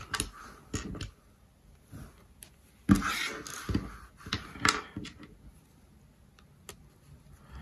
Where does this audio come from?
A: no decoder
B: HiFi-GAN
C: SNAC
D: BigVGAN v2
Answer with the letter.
A